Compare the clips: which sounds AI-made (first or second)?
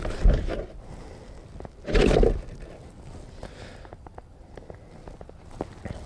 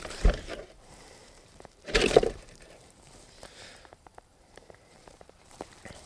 second